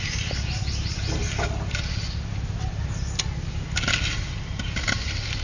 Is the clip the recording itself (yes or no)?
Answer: yes